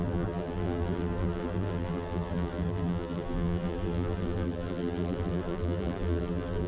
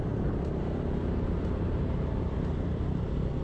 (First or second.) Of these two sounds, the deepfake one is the first